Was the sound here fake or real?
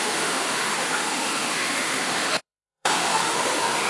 fake